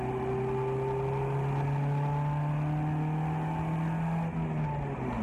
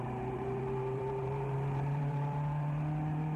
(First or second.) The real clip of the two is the first